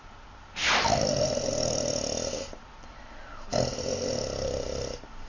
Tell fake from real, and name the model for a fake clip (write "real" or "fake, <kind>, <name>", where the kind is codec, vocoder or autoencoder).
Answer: real